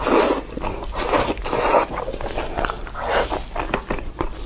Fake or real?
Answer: real